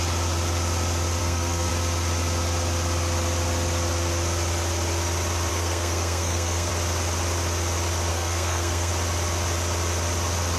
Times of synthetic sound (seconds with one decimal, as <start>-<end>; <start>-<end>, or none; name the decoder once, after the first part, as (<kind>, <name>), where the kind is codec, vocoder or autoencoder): 1.2-1.7 (codec, SNAC); 5.5-6.7; 8.1-8.9